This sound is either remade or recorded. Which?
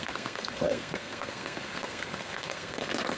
remade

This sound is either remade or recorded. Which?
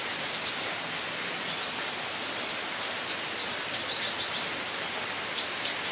recorded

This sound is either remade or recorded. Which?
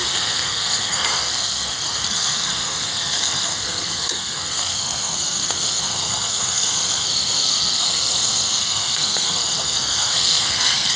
remade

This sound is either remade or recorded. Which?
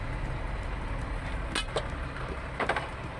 recorded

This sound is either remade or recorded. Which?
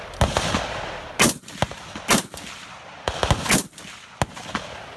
recorded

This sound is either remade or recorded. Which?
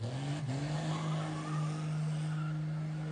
recorded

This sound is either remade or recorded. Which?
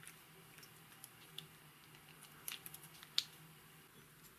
recorded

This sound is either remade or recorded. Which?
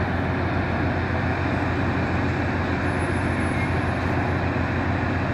recorded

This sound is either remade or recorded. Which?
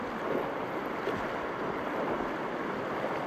recorded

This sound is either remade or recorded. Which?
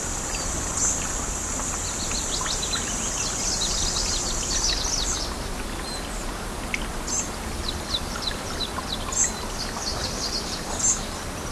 recorded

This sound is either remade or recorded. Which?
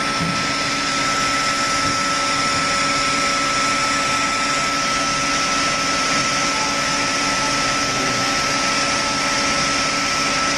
recorded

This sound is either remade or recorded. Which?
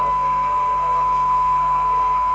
remade